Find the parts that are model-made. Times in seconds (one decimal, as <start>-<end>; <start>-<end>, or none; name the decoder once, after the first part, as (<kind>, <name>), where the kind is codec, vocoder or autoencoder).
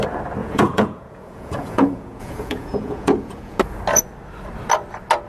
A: 0.4-3.6 (vocoder, Vocos)